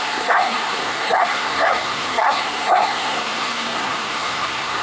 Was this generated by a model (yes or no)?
yes